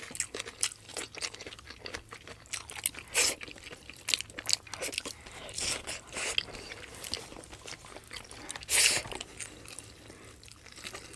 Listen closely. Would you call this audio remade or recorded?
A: recorded